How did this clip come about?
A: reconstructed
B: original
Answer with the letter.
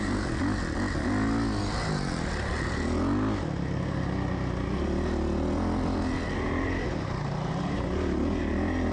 B